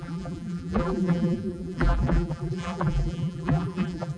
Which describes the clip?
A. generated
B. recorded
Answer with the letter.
A